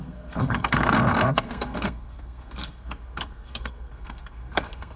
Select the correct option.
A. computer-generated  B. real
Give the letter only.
A